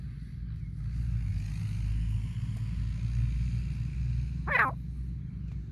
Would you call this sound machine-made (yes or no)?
no